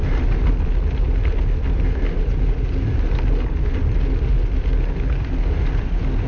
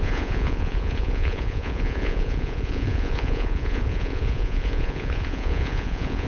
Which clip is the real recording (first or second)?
first